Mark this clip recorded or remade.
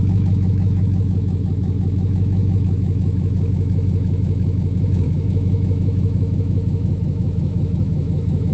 remade